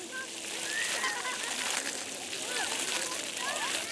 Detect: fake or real real